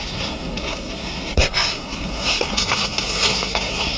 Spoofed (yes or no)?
yes